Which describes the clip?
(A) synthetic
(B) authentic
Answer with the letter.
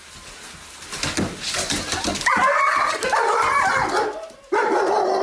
B